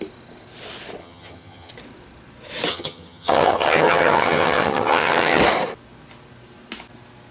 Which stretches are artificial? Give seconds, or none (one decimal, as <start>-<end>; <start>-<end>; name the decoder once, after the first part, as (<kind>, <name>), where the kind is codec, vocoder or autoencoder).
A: 1.0-1.7 (vocoder, HiFi-GAN); 2.7-5.4